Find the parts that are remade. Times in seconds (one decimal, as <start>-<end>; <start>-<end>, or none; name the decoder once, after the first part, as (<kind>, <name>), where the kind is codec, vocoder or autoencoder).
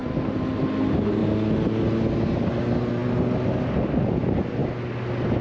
0.0-0.5 (vocoder, BigVGAN v2)